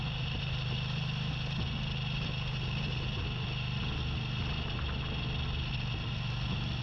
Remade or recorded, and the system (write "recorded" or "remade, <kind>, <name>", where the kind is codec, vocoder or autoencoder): recorded